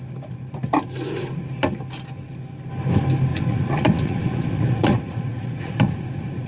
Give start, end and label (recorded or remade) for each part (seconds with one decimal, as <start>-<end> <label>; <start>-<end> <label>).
0.0-3.3 recorded; 3.3-6.5 remade